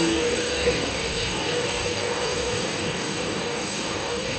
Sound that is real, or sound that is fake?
fake